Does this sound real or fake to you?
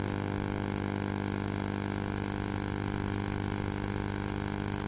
real